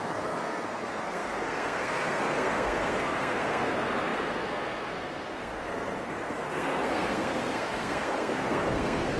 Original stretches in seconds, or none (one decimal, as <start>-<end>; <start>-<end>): none